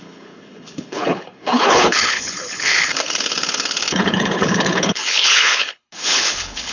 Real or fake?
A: fake